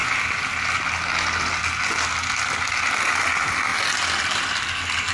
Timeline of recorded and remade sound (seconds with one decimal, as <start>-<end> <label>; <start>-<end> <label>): 0.0-0.8 remade; 0.8-5.1 recorded

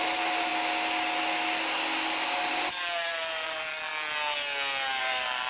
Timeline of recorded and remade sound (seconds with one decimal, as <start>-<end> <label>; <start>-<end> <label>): 0.0-0.5 remade; 0.5-2.5 recorded; 2.5-3.9 remade; 3.9-5.0 recorded; 5.0-5.5 remade

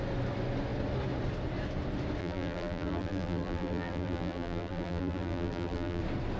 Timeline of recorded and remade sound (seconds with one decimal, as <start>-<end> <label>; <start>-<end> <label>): 0.0-2.2 recorded; 2.2-6.0 remade; 6.0-6.4 recorded

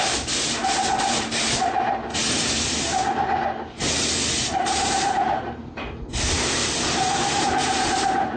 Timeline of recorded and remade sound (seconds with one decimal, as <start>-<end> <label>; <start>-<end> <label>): 0.0-2.1 remade; 2.1-4.5 recorded; 4.5-6.6 remade; 6.6-7.4 recorded; 7.4-8.4 remade